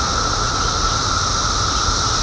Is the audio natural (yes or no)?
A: yes